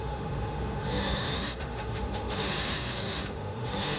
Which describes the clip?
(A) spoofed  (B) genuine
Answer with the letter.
A